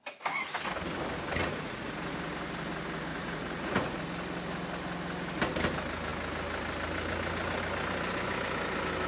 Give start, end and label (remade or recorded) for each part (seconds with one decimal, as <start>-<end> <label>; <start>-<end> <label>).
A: 0.0-1.4 recorded; 1.4-1.9 remade; 1.9-3.1 recorded; 3.1-4.0 remade; 4.0-9.1 recorded